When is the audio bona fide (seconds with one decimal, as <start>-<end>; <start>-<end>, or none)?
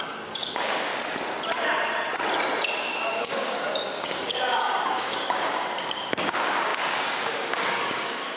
0.9-2.8